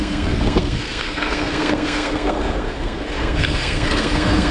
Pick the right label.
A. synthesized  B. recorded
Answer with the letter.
A